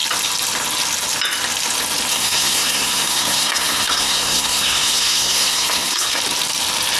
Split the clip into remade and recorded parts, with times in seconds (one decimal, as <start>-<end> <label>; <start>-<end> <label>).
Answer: 0.0-2.1 recorded; 2.1-6.2 remade; 6.2-7.0 recorded